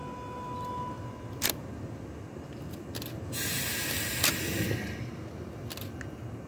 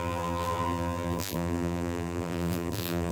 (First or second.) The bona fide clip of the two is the first